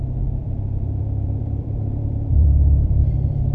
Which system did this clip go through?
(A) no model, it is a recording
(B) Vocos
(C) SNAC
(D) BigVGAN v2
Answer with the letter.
D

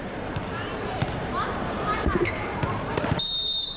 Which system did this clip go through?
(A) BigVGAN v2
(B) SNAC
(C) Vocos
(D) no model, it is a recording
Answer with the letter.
A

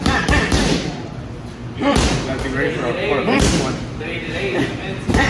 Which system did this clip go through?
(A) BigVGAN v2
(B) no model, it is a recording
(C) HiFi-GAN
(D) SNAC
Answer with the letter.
A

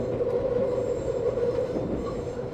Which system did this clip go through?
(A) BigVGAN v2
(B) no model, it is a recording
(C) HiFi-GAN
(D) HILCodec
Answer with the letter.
A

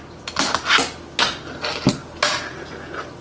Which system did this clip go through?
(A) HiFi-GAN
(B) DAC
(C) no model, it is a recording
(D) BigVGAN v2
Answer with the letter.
C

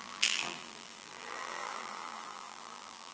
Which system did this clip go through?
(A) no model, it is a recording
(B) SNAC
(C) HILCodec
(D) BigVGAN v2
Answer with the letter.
D